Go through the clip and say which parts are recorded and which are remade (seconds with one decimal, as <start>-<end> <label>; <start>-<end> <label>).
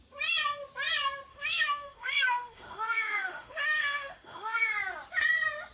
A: 0.0-1.3 recorded; 1.3-4.7 remade; 4.7-5.7 recorded